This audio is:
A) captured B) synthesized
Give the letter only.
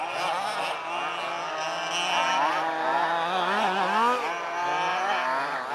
A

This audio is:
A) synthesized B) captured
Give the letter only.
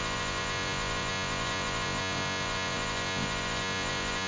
A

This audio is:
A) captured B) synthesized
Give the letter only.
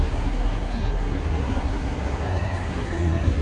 B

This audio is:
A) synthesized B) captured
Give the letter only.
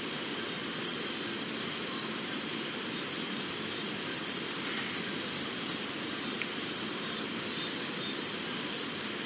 A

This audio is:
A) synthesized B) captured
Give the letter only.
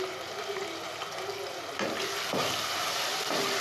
B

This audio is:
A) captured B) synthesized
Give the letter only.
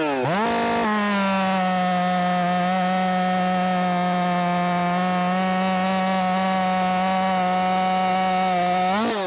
A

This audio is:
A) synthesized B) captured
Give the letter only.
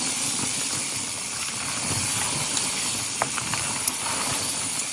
A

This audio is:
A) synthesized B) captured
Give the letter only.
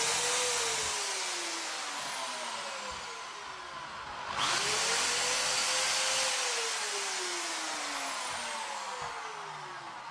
B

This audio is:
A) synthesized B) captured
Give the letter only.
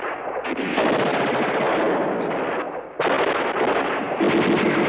B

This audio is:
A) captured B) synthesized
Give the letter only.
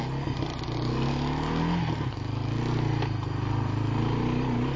A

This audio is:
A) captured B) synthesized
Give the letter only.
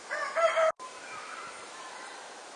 A